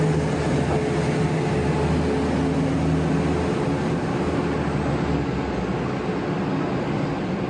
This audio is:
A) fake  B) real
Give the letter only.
B